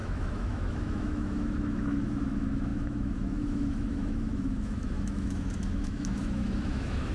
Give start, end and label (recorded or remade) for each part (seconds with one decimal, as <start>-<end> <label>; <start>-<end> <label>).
0.0-7.1 remade